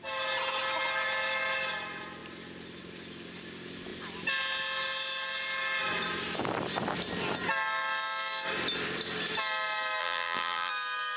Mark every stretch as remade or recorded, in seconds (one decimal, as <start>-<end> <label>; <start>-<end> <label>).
0.0-10.0 recorded; 10.0-10.7 remade; 10.7-11.2 recorded